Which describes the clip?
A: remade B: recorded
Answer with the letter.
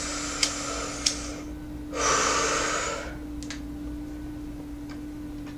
B